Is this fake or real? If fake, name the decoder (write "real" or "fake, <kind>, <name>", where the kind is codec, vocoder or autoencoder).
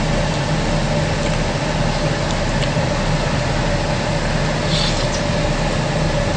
real